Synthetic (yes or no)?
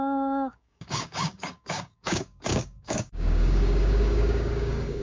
yes